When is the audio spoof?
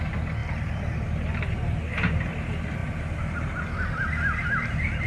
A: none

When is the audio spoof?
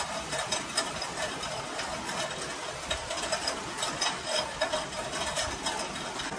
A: 3.0-4.1 (vocoder, BigVGAN v2)